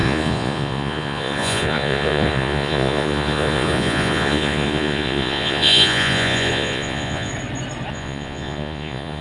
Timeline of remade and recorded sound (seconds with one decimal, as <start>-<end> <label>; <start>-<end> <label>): 0.0-7.3 remade; 7.3-7.9 recorded; 7.9-9.2 remade

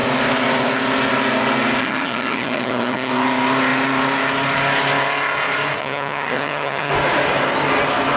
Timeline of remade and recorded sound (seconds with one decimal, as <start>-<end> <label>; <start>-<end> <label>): 0.0-1.8 recorded; 1.8-3.1 remade; 3.1-5.8 recorded; 5.8-6.9 remade; 6.9-8.2 recorded